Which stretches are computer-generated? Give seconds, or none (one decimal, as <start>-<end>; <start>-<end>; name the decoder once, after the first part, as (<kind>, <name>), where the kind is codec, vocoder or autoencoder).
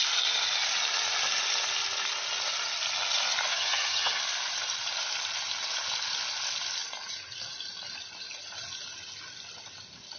3.5-4.2 (vocoder, HiFi-GAN)